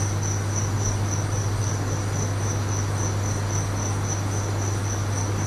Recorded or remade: recorded